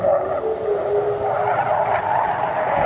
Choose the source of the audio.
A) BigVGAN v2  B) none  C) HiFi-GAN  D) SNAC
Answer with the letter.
B